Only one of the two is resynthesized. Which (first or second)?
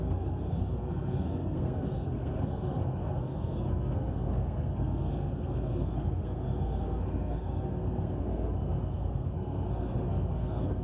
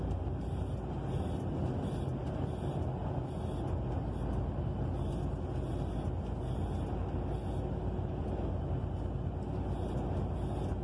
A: first